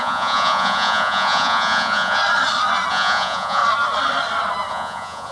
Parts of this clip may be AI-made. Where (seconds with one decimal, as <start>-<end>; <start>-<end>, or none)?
0.0-2.2; 2.9-3.6; 4.7-5.3